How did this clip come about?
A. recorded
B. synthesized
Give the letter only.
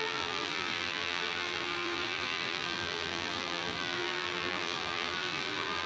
B